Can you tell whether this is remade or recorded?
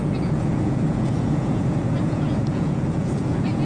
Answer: remade